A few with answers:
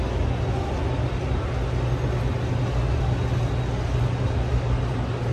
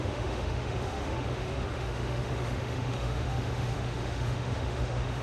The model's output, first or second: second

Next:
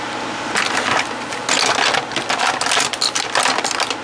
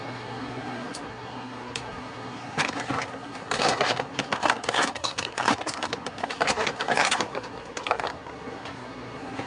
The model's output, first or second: second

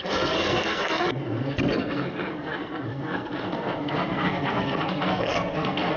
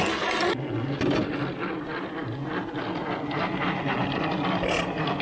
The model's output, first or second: first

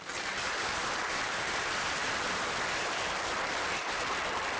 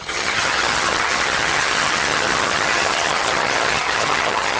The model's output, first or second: second